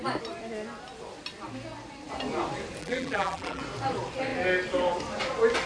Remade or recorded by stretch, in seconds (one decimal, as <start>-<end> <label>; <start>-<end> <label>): 0.0-2.8 recorded; 2.8-3.6 remade; 3.6-5.7 recorded